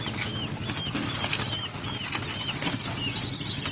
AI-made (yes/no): no